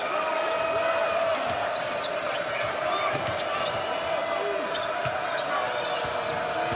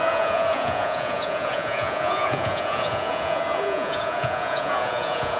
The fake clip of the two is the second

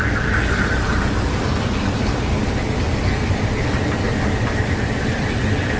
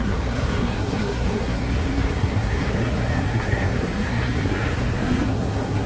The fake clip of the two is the second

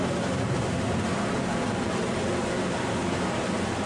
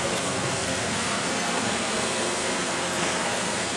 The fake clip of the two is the second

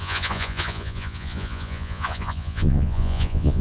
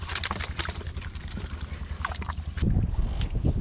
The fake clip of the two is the first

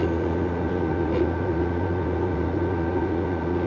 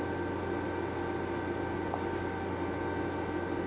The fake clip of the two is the first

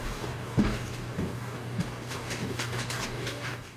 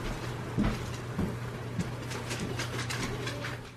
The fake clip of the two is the first